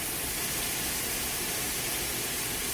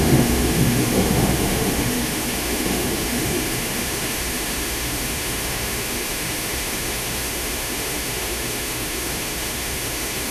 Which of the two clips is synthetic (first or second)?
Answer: second